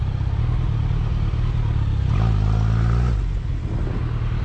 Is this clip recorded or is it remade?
recorded